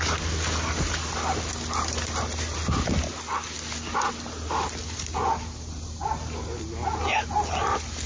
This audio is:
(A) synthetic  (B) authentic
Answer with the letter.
B